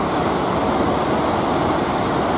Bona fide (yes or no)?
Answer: yes